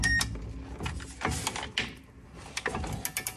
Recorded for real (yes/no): yes